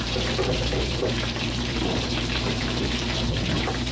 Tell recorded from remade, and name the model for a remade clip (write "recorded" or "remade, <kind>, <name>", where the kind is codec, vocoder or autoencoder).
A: remade, vocoder, BigVGAN v2